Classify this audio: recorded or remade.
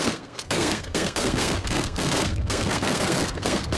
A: remade